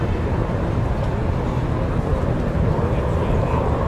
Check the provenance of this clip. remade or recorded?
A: recorded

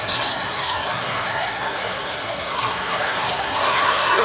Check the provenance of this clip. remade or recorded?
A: remade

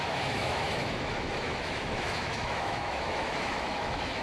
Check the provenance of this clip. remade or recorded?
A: remade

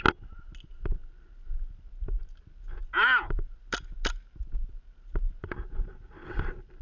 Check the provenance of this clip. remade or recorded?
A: recorded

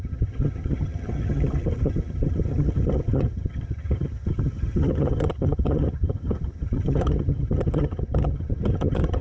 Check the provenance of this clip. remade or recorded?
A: remade